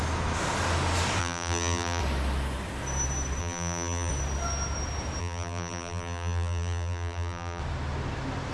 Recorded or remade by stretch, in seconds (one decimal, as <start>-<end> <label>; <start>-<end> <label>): 0.0-1.2 recorded; 1.2-2.0 remade; 2.0-3.4 recorded; 3.4-4.1 remade; 4.1-5.2 recorded; 5.2-7.6 remade; 7.6-8.5 recorded